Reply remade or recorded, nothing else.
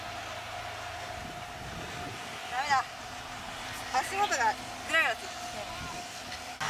recorded